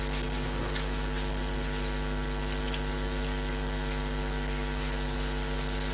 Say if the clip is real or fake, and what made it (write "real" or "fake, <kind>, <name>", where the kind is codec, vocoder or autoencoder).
real